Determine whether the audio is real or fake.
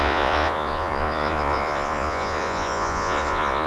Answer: fake